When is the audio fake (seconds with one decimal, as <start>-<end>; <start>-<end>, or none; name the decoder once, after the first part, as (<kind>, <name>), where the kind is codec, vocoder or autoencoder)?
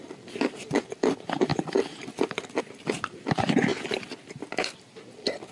0.0-3.7 (vocoder, BigVGAN v2); 4.3-5.5